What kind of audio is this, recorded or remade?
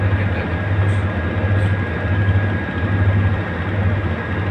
recorded